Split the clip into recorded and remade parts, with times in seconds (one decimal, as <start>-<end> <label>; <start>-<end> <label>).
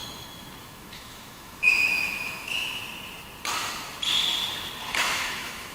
0.0-0.6 recorded; 0.6-2.8 remade; 2.8-5.0 recorded; 5.0-5.7 remade